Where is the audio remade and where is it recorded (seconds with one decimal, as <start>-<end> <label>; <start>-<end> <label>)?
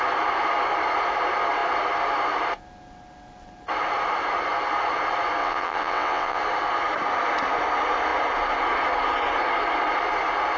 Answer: 0.0-5.4 recorded; 5.4-6.4 remade; 6.4-10.6 recorded